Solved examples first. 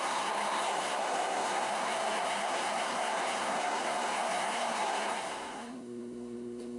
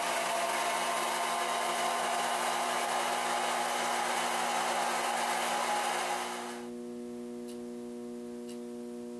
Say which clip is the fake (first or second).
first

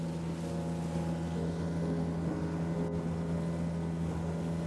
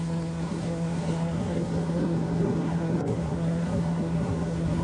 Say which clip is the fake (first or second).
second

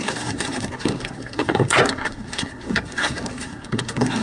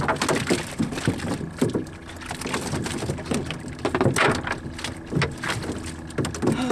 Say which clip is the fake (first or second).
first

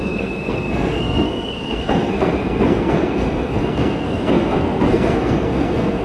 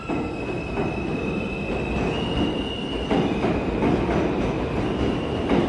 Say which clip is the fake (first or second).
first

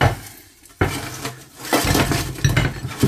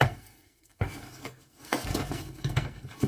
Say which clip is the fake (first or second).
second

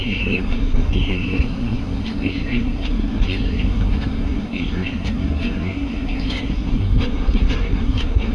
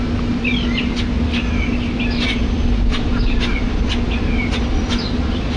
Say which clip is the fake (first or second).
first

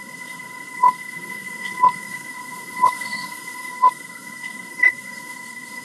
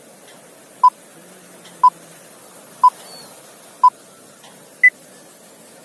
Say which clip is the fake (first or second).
first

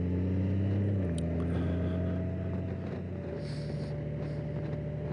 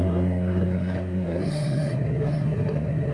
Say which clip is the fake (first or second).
second